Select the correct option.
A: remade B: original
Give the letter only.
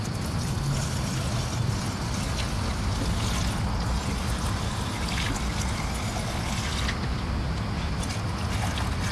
B